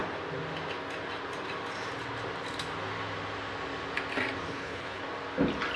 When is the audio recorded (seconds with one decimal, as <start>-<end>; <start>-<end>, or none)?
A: 0.0-4.5; 5.0-5.8